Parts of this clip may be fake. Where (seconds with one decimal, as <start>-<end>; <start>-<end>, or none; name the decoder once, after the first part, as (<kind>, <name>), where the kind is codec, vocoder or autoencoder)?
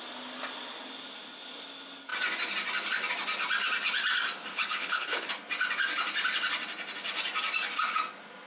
4.5-5.3 (codec, HILCodec)